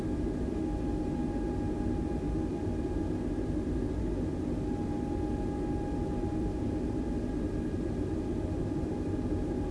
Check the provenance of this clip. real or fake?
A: real